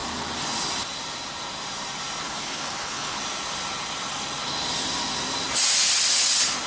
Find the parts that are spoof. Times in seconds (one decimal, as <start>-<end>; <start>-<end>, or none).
2.2-3.2